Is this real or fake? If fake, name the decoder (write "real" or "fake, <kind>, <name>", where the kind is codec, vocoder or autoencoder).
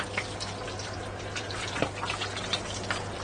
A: real